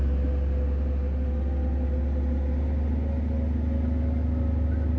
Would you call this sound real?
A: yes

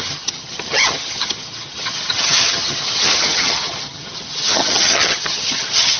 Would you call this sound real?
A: no